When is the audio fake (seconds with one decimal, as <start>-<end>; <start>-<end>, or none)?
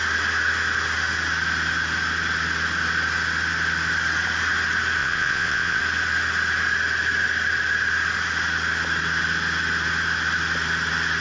5.0-5.8